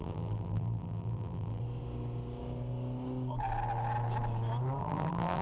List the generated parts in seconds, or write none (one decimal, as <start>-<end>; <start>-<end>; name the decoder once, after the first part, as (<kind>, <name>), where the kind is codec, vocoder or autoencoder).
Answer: 0.0-1.6 (vocoder, BigVGAN v2); 4.8-5.4